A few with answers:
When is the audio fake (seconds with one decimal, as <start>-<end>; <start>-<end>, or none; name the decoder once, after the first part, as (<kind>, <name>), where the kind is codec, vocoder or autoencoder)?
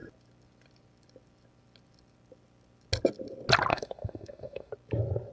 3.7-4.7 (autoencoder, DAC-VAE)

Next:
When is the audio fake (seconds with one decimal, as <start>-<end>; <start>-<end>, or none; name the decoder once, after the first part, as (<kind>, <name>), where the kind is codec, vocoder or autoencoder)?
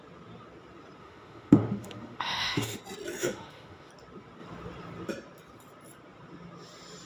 1.0-2.8 (autoencoder, DAC-VAE); 3.2-3.9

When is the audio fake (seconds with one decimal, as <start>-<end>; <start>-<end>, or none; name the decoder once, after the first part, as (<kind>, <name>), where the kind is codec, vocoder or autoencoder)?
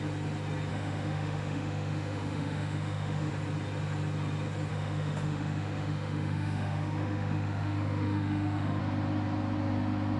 0.7-3.3 (autoencoder, DAC-VAE); 4.7-8.8